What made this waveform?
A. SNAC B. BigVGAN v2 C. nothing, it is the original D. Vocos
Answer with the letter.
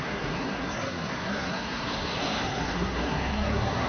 A